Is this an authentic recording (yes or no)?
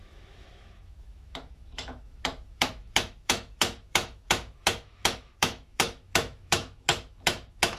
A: no